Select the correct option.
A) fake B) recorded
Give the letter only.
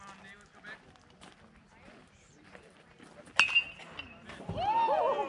B